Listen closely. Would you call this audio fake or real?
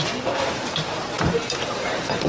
fake